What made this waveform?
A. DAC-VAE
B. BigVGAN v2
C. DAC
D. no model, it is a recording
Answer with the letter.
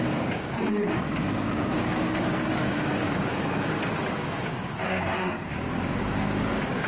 C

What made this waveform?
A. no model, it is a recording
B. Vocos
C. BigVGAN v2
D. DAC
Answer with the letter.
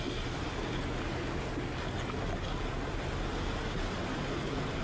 A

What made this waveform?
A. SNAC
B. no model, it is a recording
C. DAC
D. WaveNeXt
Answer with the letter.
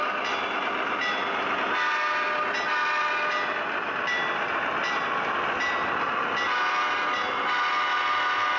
B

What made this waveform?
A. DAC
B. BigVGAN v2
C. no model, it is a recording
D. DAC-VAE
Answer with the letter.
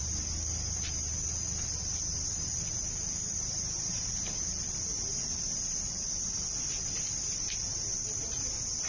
C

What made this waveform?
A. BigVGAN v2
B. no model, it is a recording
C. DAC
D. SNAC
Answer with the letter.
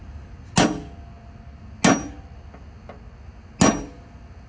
B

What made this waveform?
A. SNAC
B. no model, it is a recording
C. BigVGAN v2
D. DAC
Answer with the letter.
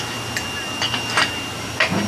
B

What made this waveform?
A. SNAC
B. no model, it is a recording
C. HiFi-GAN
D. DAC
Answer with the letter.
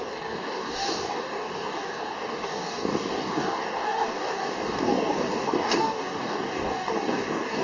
D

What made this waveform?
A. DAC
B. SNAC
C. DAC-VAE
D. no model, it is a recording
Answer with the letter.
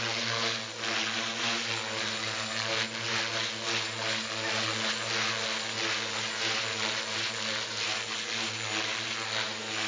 D